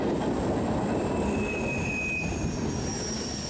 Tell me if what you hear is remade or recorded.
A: recorded